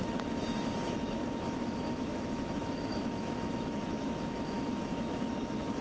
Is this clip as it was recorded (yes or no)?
no